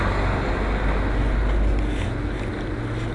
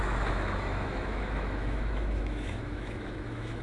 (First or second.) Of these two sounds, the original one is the first